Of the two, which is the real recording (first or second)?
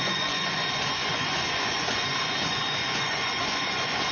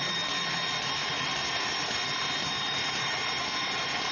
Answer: second